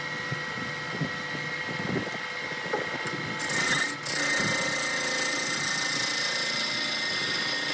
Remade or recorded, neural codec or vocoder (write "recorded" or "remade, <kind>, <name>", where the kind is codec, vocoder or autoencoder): recorded